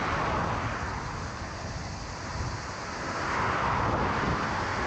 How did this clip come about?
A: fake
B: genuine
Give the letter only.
B